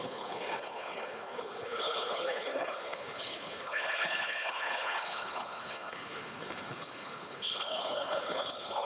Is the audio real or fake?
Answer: fake